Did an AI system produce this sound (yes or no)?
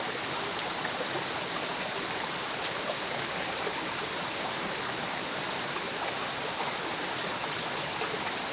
no